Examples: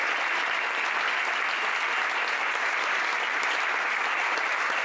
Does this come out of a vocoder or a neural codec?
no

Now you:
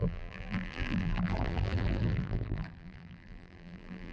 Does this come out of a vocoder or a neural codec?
yes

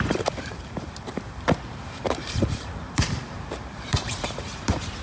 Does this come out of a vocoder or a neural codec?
yes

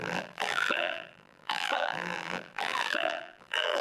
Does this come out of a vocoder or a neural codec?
yes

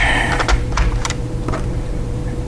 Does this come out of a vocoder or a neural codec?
yes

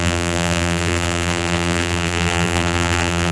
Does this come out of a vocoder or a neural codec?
yes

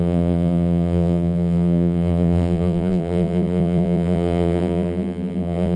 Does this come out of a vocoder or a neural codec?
yes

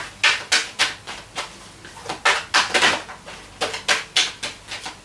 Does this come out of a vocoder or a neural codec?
no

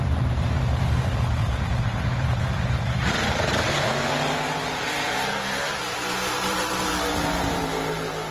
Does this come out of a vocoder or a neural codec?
yes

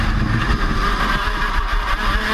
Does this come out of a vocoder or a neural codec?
yes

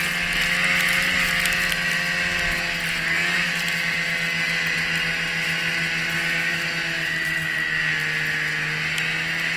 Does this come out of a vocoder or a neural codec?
no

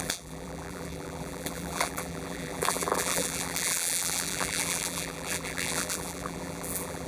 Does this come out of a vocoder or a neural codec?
yes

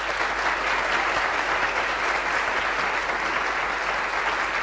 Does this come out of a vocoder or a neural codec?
no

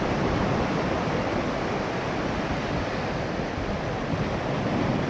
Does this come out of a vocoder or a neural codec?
no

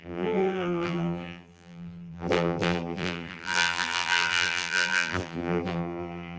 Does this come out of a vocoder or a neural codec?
yes